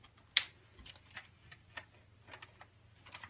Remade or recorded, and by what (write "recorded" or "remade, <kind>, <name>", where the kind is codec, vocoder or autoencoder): recorded